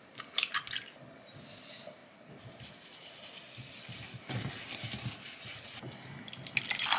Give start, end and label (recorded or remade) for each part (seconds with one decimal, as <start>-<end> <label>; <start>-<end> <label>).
0.0-7.0 recorded